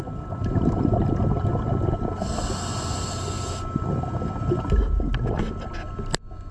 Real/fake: real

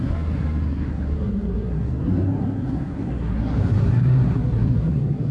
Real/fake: fake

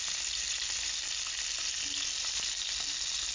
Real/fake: real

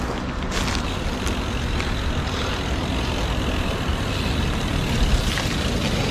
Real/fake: real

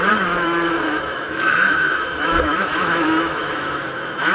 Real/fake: fake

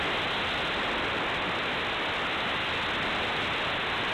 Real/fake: real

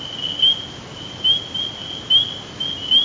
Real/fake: real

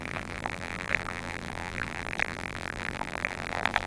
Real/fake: fake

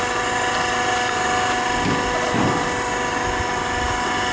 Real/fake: real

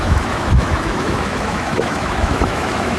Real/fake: fake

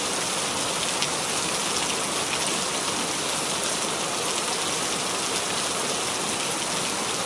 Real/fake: real